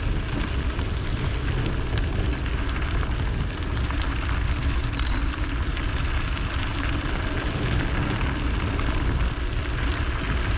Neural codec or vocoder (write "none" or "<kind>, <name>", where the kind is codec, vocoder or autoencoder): none